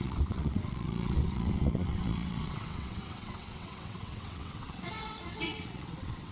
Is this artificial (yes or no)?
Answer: yes